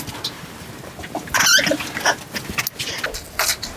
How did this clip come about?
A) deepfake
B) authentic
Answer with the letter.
B